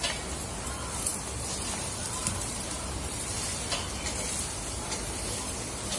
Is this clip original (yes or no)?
yes